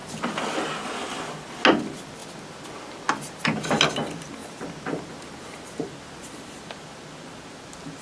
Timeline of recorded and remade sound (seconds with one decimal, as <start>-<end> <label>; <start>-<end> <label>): 0.0-8.0 recorded